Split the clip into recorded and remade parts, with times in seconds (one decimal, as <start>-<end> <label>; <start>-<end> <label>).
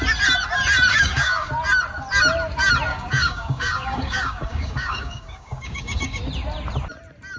0.0-0.9 recorded; 0.9-1.5 remade; 1.5-2.9 recorded; 2.9-6.2 remade; 6.2-7.4 recorded